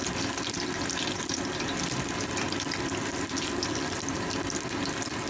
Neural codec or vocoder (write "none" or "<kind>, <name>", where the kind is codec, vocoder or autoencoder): none